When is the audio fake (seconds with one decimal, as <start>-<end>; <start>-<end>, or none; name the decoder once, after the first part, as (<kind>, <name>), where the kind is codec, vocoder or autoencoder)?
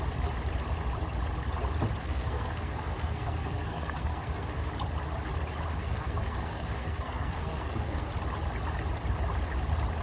2.0-4.7 (codec, SNAC); 5.8-8.1